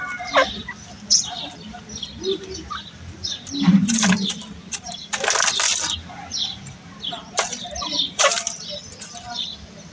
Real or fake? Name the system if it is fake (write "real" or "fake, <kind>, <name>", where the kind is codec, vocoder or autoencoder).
fake, vocoder, BigVGAN v2